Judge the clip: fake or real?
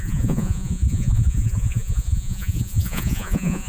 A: fake